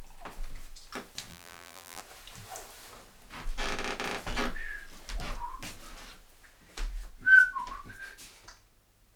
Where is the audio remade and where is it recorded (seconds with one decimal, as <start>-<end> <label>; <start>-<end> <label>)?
0.0-1.3 recorded; 1.3-2.0 remade; 2.0-9.2 recorded